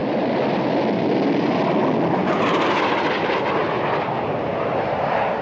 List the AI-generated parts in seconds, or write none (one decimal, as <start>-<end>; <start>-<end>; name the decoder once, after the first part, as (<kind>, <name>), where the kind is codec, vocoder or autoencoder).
none

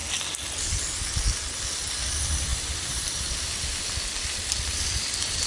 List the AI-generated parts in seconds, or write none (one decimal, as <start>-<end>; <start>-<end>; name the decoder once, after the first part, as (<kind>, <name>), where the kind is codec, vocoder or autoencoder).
2.1-5.5 (vocoder, BigVGAN v2)

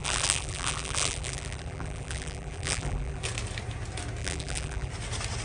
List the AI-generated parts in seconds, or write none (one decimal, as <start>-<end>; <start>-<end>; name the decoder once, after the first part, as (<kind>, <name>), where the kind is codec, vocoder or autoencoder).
0.0-3.2 (vocoder, BigVGAN v2); 4.2-4.9

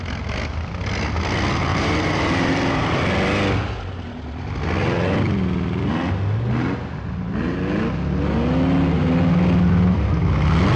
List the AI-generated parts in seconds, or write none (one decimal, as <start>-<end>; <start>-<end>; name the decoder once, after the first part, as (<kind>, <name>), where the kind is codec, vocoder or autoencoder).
1.7-3.0 (vocoder, BigVGAN v2)

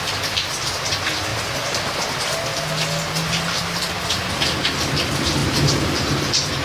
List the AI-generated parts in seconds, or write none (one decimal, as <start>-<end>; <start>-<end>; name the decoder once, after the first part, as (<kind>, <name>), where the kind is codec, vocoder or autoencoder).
1.3-2.0 (vocoder, BigVGAN v2); 5.4-6.6

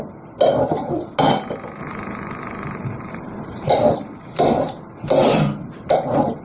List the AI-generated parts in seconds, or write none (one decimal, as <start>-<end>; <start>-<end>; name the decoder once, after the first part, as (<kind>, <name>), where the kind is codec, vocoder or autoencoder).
1.8-3.7 (vocoder, BigVGAN v2)

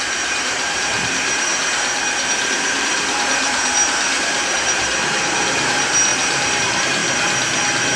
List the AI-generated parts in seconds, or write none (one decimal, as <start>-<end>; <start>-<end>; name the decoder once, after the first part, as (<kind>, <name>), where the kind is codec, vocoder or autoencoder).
0.0-1.5 (vocoder, BigVGAN v2); 2.4-7.0